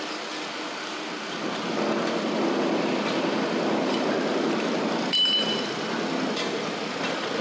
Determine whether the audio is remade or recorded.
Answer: recorded